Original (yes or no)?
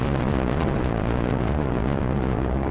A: no